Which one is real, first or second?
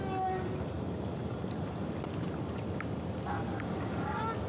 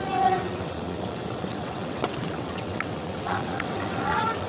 first